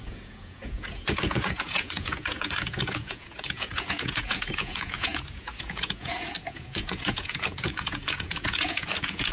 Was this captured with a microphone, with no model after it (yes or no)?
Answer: no